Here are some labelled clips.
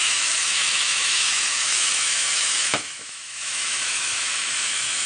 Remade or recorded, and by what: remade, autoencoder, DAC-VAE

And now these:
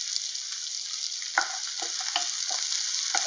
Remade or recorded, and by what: recorded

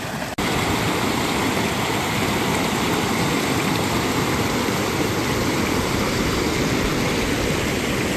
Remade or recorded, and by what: recorded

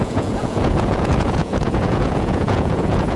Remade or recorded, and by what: remade, vocoder, Vocos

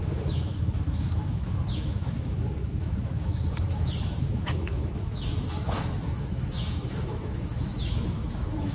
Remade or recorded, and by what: remade, autoencoder, DAC-VAE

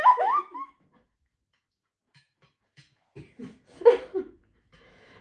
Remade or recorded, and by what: remade, autoencoder, DAC-VAE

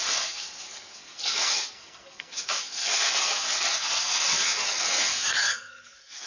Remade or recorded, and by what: remade, codec, SNAC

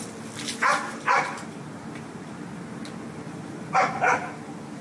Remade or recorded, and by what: remade, vocoder, BigVGAN v2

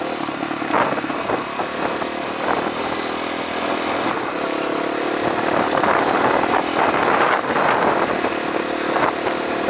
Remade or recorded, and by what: recorded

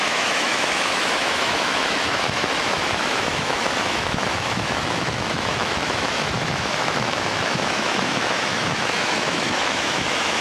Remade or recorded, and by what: remade, autoencoder, DAC-VAE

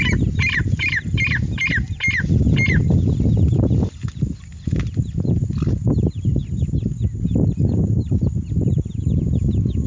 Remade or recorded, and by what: recorded